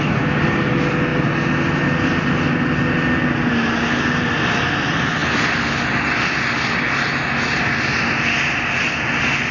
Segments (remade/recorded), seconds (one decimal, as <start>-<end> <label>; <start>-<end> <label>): 0.0-9.5 recorded